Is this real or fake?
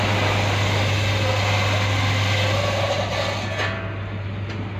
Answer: real